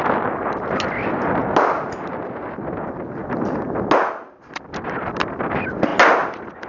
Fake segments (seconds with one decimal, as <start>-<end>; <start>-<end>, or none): none